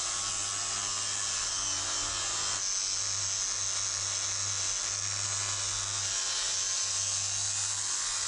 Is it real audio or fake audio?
real